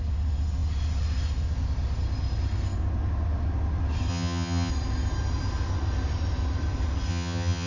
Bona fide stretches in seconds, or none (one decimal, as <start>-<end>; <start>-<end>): 0.0-4.1; 4.7-7.1